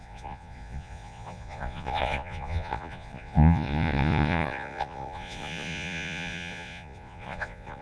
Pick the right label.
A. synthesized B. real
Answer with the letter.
A